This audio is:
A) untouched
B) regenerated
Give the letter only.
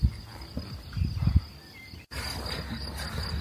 A